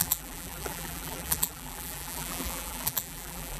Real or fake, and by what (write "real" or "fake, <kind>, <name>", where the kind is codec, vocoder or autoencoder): fake, vocoder, BigVGAN v2